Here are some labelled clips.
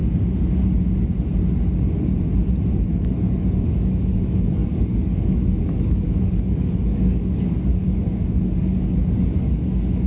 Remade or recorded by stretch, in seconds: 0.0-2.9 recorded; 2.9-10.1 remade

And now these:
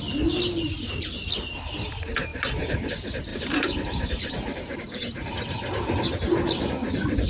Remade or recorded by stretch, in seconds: 0.0-2.3 recorded; 2.3-2.9 remade; 2.9-3.3 recorded; 3.3-5.3 remade; 5.3-7.3 recorded

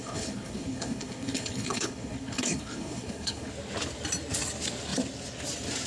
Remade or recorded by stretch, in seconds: 0.0-3.5 remade; 3.5-5.9 recorded

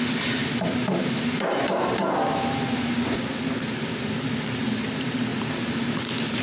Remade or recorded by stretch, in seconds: 0.0-0.4 recorded; 0.4-2.8 remade; 2.8-5.3 recorded; 5.3-6.4 remade